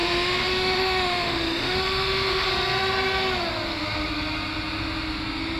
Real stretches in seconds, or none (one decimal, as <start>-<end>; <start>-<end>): 2.5-5.6